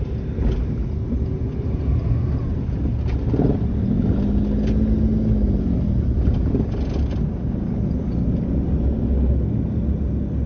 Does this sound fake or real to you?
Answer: real